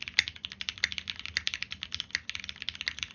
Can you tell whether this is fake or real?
real